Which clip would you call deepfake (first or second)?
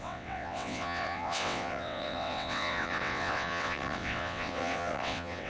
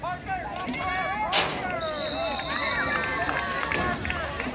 first